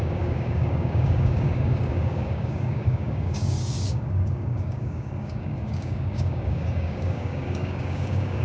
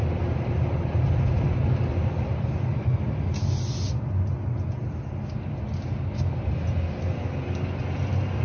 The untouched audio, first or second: second